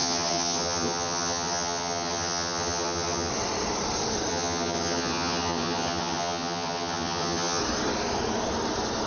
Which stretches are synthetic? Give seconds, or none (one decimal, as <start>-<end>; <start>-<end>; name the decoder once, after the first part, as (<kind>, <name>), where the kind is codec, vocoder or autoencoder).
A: 0.0-3.3 (vocoder, HiFi-GAN); 4.3-7.6